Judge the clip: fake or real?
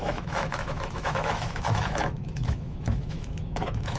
fake